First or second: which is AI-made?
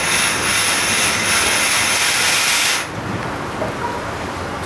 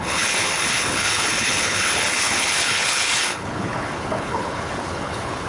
second